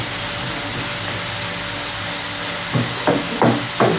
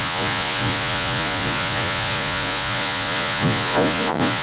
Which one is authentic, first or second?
first